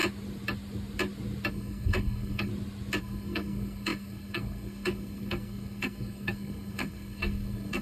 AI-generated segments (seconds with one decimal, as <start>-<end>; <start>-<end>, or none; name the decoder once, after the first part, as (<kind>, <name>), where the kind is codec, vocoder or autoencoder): 1.5-2.5 (codec, SNAC); 3.0-7.8